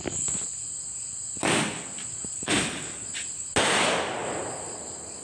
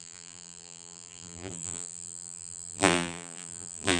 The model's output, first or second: second